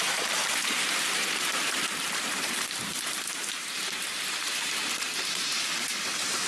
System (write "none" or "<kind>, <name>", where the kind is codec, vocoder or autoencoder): vocoder, BigVGAN v2